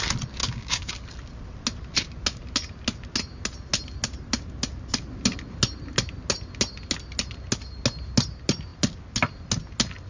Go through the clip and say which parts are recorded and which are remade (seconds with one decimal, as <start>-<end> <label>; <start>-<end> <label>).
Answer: 0.0-0.4 recorded; 0.4-0.9 remade; 0.9-10.1 recorded